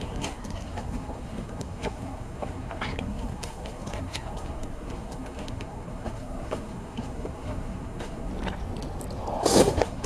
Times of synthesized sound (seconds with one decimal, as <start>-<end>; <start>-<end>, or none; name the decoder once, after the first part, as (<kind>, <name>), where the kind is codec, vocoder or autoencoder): 0.0-8.3 (codec, SNAC); 9.4-10.1